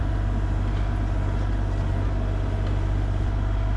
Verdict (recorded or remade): recorded